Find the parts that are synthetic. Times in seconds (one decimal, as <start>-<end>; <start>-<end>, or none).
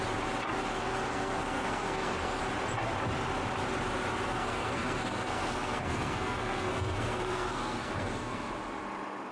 0.7-2.4; 4.3-8.5